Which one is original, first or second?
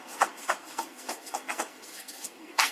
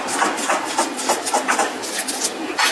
second